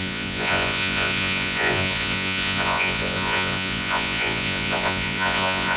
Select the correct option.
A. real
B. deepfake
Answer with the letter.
B